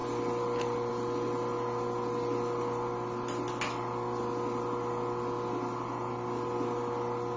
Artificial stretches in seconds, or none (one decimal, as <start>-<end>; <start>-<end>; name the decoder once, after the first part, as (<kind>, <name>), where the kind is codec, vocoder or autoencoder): none